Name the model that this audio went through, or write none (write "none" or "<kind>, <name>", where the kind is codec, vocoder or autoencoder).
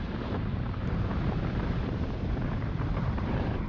vocoder, BigVGAN v2